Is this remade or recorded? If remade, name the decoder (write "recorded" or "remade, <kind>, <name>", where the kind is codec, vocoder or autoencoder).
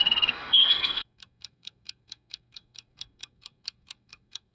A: remade, codec, SNAC